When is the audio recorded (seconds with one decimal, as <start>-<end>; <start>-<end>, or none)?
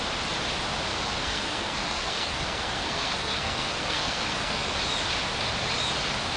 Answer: 0.0-0.9; 4.7-6.4